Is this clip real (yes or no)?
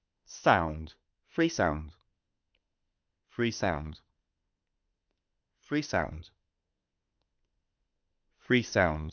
no